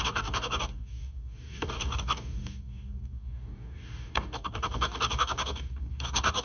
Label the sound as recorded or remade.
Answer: remade